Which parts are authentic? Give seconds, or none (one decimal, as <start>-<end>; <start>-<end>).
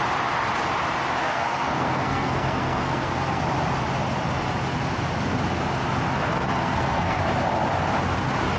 0.0-1.2; 3.4-6.2; 7.2-8.6